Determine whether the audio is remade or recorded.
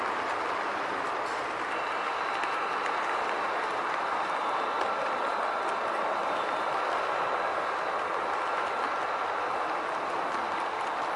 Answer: recorded